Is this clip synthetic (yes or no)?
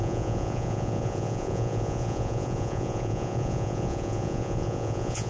yes